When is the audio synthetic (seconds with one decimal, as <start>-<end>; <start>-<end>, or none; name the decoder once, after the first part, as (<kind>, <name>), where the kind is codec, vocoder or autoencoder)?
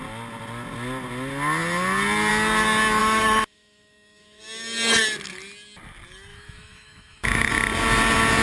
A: 3.0-4.4 (autoencoder, DAC-VAE); 6.3-7.5